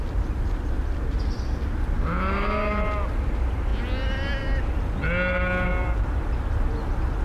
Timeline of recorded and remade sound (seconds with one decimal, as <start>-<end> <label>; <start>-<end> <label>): 0.0-7.2 recorded